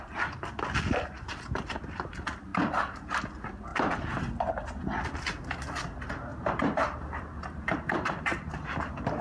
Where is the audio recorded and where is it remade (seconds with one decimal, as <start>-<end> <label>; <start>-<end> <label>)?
0.0-2.5 recorded; 2.5-3.2 remade; 3.2-6.3 recorded; 6.3-8.5 remade; 8.5-9.2 recorded